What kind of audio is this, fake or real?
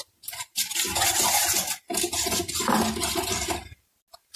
real